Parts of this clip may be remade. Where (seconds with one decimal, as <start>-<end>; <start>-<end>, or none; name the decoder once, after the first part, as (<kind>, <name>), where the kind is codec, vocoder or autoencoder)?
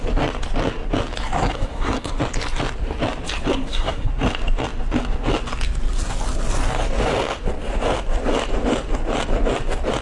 1.4-2.1 (codec, SNAC); 3.5-4.1